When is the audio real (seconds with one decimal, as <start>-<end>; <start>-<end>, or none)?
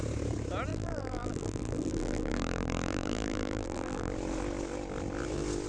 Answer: 0.0-0.7; 4.1-5.7